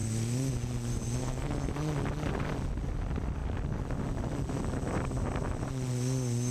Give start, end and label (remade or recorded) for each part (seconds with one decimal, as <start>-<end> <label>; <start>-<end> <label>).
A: 0.0-1.2 recorded; 1.2-1.7 remade; 1.7-6.5 recorded